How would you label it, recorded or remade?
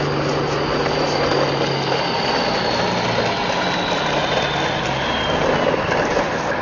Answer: recorded